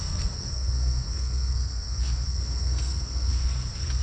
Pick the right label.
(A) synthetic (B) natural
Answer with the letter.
A